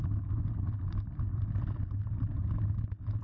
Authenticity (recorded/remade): recorded